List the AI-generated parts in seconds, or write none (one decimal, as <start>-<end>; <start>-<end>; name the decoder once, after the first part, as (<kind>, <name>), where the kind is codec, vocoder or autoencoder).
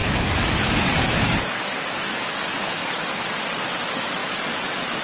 0.0-3.0 (codec, DAC)